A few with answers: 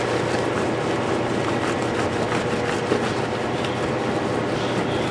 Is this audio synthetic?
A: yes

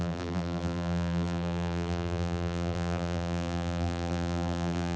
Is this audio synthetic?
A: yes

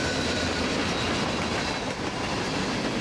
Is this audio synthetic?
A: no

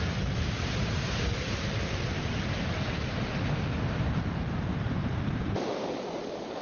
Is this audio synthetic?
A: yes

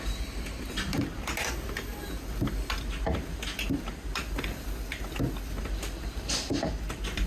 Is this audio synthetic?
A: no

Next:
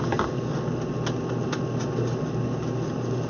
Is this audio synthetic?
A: no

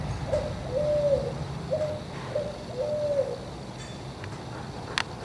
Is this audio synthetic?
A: no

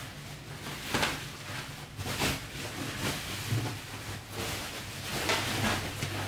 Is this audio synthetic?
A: no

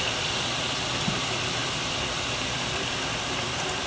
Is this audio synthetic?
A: yes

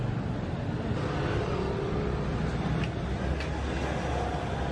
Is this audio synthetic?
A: no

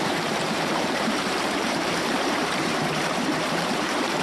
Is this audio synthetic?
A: yes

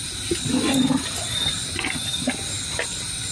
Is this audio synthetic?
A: no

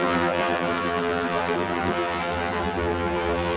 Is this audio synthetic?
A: yes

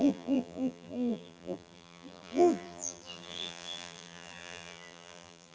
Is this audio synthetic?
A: yes